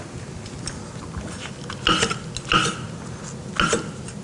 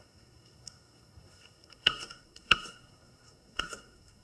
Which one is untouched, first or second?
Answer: first